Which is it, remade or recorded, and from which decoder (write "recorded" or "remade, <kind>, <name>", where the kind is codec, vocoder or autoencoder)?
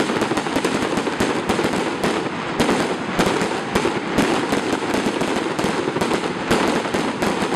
recorded